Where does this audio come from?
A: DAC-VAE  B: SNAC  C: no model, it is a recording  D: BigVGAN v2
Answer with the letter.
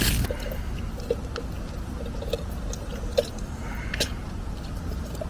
C